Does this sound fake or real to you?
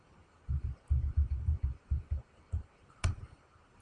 fake